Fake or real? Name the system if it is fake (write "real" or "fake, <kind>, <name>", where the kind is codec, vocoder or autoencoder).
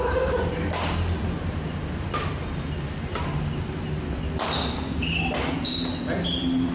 real